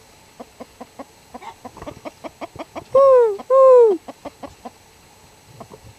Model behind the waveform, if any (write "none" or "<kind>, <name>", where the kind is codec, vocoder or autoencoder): none